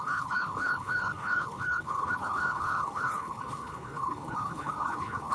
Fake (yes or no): yes